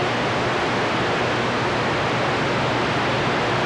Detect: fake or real real